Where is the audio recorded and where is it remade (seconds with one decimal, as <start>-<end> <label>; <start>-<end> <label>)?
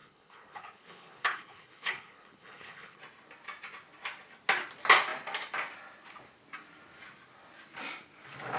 0.0-3.0 remade; 3.0-8.6 recorded